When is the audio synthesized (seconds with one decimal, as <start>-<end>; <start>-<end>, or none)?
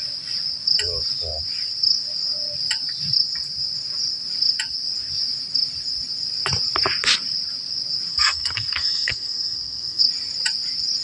8.1-10.0